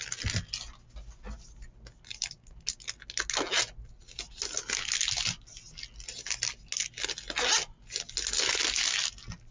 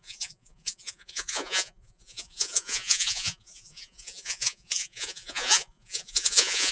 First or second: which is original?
first